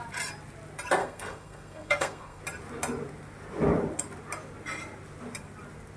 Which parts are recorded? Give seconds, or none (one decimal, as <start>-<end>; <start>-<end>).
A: 0.0-1.0; 2.4-6.0